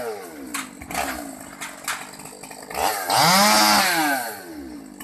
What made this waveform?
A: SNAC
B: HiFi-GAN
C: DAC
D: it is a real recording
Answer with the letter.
D